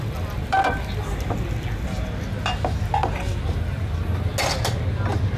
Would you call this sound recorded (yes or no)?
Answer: yes